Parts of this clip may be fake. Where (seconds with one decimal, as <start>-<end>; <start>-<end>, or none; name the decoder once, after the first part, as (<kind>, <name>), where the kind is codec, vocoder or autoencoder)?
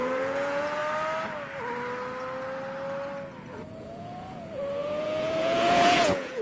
0.0-0.8 (vocoder, Vocos); 3.5-6.4